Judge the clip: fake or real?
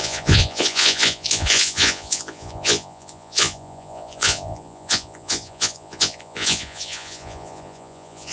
fake